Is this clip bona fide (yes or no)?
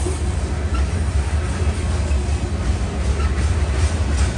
yes